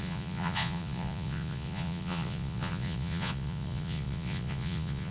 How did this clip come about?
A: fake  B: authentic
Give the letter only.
A